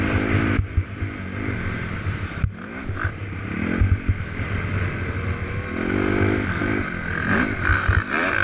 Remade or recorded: recorded